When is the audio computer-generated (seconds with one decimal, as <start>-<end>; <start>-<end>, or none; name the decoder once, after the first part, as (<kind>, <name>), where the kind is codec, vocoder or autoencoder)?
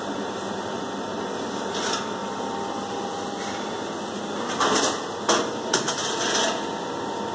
2.2-3.9 (vocoder, BigVGAN v2); 6.0-6.5